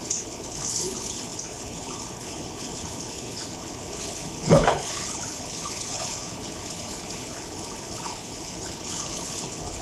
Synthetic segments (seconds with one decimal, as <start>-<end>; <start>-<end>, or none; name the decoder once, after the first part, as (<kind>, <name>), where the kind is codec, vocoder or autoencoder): 0.0-9.8 (codec, HILCodec)